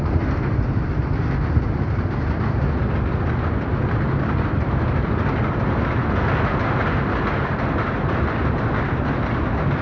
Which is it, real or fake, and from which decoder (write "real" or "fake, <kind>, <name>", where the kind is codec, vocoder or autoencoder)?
real